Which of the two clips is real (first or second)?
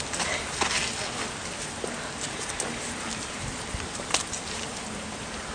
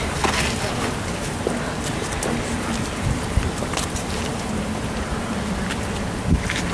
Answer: first